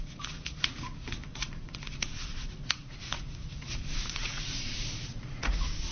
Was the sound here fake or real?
fake